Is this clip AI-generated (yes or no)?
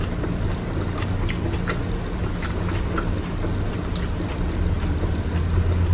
no